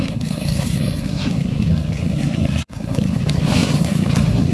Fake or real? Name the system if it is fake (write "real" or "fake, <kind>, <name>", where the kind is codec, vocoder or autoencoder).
fake, codec, SNAC